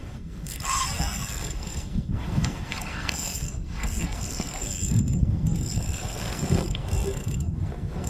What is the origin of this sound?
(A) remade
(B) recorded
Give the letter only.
A